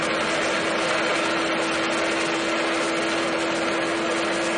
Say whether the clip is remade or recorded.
recorded